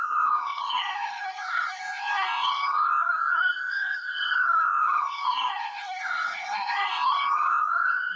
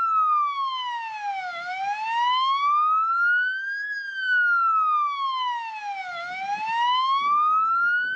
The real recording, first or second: second